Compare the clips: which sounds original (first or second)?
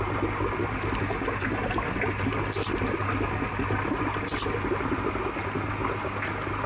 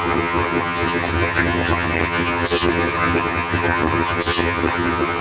first